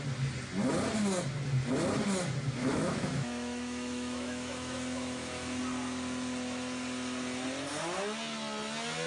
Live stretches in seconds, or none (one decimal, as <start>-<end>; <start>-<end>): 0.0-2.6; 5.6-9.1